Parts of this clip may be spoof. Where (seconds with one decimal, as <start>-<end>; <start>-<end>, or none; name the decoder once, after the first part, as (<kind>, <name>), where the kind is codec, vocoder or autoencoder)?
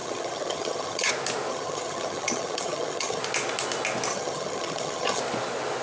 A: 0.0-1.1 (vocoder, HiFi-GAN); 1.5-3.2; 4.1-5.2